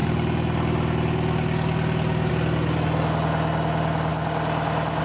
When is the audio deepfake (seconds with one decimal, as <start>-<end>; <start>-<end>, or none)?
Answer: none